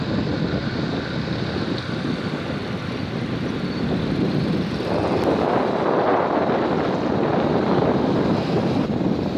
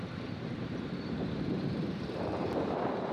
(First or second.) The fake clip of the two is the second